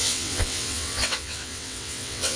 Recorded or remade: remade